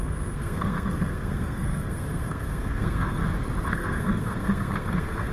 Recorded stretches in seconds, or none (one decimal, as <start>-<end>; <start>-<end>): 3.2-3.7